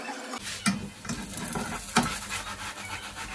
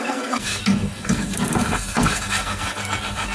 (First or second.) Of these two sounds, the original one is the first